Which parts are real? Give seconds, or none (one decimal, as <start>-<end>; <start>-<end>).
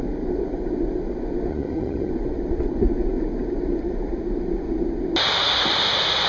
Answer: 0.0-1.5; 2.1-6.3